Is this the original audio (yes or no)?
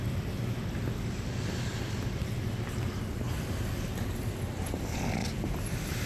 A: yes